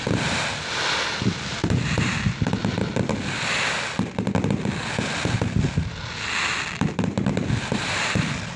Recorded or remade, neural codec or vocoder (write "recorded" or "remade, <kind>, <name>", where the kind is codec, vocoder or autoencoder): remade, vocoder, BigVGAN v2